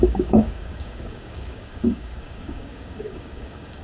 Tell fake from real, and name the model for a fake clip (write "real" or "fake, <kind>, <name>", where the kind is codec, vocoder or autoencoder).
fake, codec, DAC